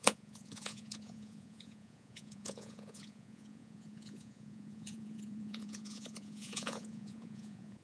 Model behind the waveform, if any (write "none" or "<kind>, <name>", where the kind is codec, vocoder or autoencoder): vocoder, Vocos